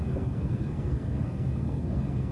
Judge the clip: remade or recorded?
remade